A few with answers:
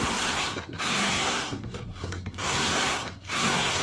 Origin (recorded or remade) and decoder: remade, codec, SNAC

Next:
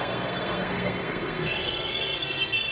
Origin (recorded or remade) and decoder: remade, codec, SNAC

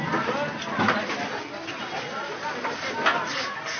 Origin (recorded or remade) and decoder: recorded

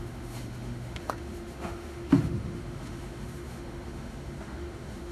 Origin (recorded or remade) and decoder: remade, autoencoder, DAC-VAE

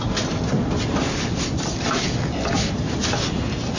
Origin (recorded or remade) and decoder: recorded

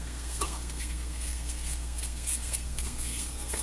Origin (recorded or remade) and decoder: remade, codec, SNAC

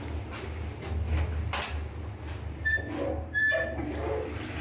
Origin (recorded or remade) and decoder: recorded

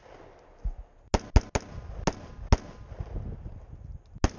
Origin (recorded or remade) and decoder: recorded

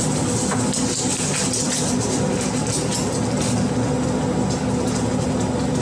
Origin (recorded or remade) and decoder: recorded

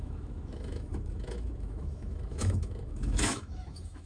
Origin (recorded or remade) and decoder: remade, autoencoder, DAC-VAE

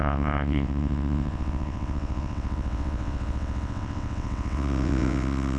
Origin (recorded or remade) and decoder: remade, vocoder, WaveNeXt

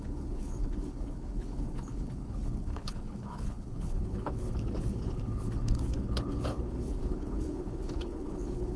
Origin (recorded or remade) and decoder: remade, codec, HILCodec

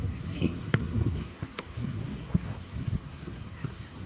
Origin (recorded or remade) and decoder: remade, codec, SNAC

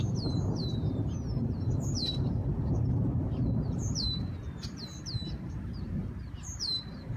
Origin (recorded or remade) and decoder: remade, vocoder, BigVGAN v2